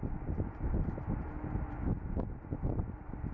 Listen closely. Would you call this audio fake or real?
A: real